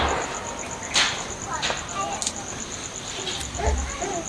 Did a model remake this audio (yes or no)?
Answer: no